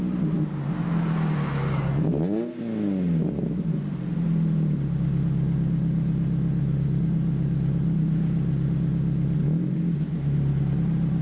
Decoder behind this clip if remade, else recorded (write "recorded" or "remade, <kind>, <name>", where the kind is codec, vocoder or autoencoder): recorded